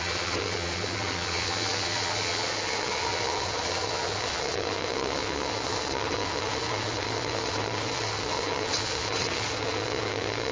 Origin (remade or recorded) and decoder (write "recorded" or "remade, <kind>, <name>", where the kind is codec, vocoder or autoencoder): remade, vocoder, WaveNeXt